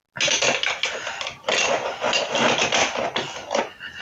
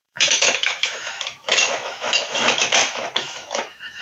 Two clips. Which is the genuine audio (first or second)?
first